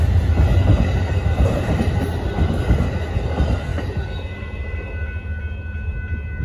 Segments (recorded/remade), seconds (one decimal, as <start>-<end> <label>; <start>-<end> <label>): 0.0-0.7 recorded; 0.7-2.3 remade; 2.3-3.7 recorded; 3.7-4.9 remade; 4.9-6.4 recorded